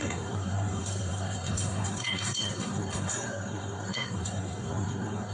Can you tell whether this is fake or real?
fake